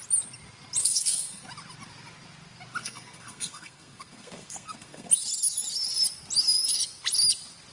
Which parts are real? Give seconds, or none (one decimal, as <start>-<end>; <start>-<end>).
0.0-0.8; 1.4-2.8; 5.1-7.7